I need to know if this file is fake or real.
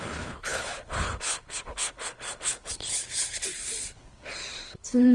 fake